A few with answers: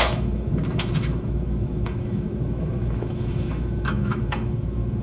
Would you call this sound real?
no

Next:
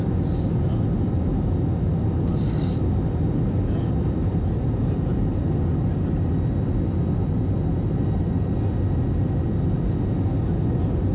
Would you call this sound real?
yes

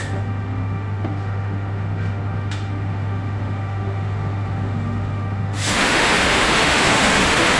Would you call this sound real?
no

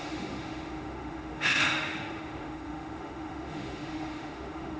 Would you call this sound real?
no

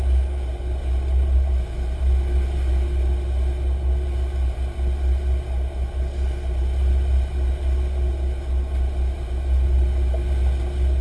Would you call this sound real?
yes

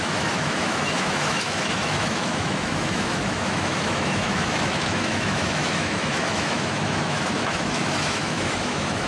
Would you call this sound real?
no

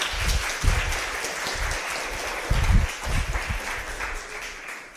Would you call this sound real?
yes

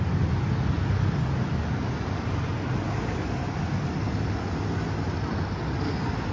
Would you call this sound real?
yes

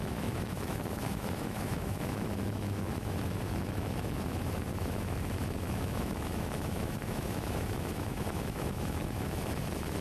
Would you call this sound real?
no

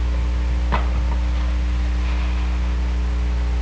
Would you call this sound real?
yes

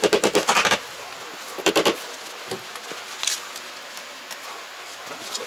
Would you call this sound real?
yes